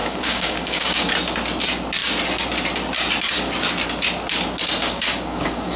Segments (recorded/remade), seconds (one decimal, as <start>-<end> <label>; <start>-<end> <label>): 0.0-1.1 remade; 1.1-4.8 recorded; 4.8-5.8 remade

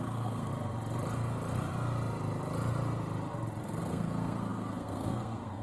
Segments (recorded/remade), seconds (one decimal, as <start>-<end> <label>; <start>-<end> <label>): 0.0-0.5 remade; 0.5-3.6 recorded; 3.6-5.6 remade

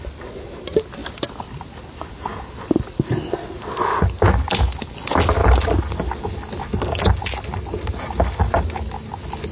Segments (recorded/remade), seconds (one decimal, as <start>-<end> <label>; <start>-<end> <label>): 0.0-9.5 recorded

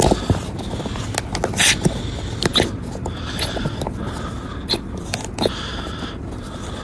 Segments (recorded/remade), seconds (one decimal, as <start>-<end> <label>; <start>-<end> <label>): 0.0-6.8 recorded

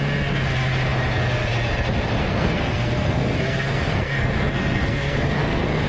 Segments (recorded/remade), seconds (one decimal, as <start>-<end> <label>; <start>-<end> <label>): 0.0-2.2 recorded; 2.2-5.9 remade